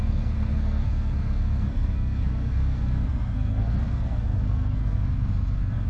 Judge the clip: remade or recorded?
remade